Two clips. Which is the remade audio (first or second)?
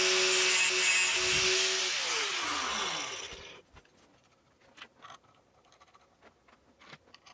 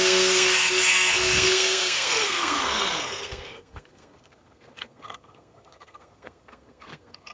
second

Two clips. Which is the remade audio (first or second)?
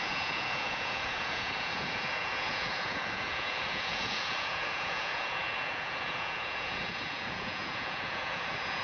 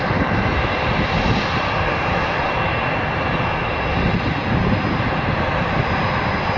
first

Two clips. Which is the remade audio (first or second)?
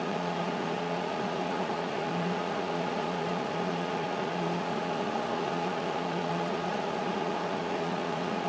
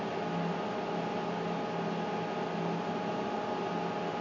first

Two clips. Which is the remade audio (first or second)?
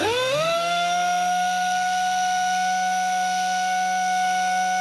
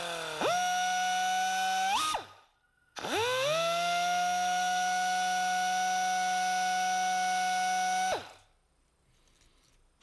first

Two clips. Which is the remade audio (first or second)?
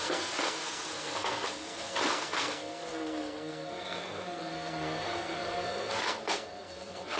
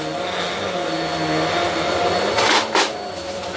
first